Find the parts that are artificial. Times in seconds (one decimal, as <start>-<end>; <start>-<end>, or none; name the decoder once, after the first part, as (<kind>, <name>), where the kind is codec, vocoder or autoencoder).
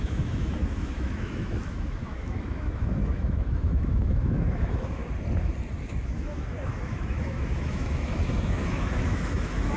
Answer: 0.0-5.0 (autoencoder, DAC-VAE); 5.8-9.8